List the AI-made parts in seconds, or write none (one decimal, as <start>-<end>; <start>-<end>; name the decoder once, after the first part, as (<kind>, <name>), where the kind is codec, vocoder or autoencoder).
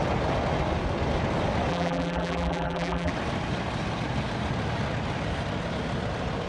1.7-3.1 (vocoder, BigVGAN v2)